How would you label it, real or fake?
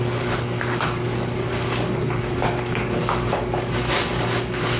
fake